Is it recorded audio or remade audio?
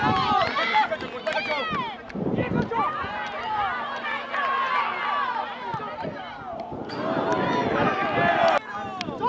recorded